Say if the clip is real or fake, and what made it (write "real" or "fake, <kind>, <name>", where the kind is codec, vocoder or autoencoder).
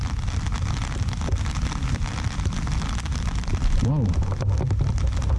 real